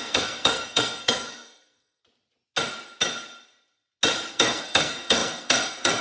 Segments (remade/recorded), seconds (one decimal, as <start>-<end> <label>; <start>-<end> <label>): 0.0-2.0 remade; 2.0-4.3 recorded; 4.3-6.0 remade